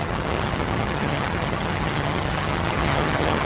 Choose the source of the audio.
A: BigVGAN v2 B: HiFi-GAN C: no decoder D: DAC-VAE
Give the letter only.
B